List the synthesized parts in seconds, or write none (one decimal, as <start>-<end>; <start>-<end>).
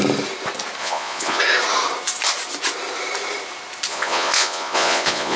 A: 0.8-1.4; 3.9-5.4